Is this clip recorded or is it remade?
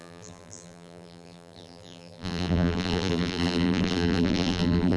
remade